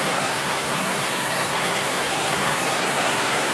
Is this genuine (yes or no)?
no